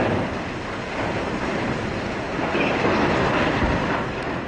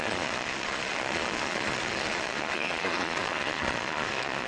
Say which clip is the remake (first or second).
second